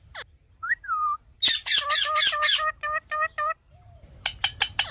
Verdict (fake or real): real